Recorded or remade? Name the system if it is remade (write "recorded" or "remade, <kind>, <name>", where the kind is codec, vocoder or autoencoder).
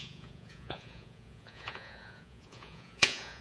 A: remade, vocoder, Vocos